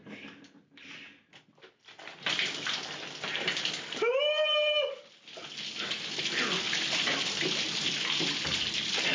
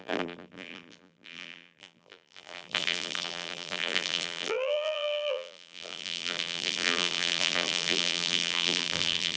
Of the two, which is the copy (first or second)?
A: second